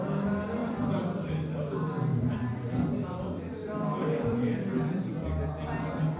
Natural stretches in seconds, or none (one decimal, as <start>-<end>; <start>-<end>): 0.0-0.6; 1.2-2.1; 5.5-6.2